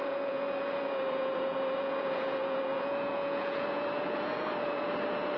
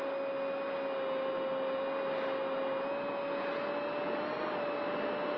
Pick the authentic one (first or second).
second